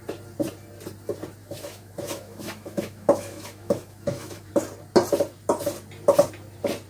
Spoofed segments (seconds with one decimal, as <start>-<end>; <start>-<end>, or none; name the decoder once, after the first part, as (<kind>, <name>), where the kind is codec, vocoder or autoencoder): 1.4-4.5 (autoencoder, DAC-VAE)